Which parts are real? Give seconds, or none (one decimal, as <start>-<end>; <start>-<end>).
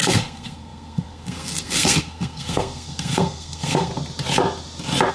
3.9-5.1